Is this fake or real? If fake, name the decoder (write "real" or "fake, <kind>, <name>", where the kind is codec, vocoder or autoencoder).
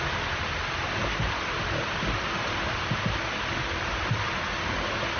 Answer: real